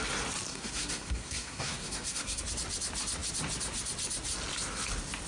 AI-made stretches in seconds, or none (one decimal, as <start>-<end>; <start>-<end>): 0.5-2.4